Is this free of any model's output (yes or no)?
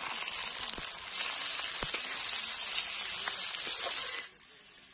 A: yes